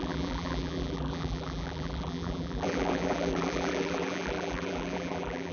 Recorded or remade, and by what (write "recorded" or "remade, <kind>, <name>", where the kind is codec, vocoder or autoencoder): remade, vocoder, BigVGAN v2